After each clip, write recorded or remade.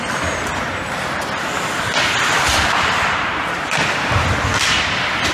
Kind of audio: recorded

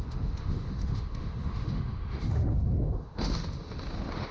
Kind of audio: remade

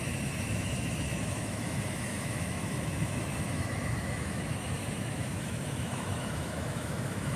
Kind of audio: remade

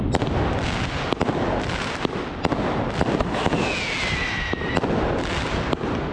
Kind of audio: recorded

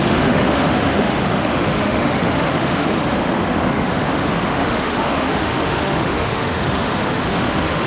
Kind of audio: remade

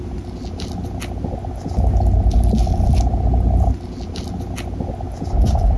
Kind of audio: recorded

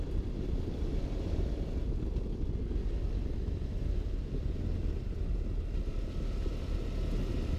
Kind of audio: recorded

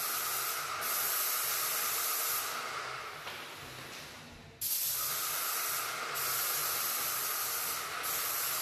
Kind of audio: recorded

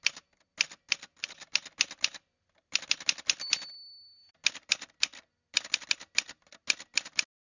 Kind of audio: recorded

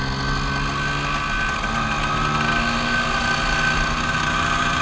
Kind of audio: recorded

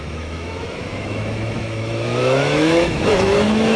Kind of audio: remade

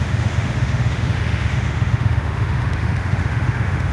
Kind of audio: remade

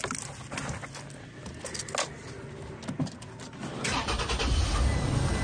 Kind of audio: recorded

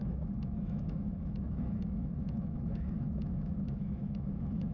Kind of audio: remade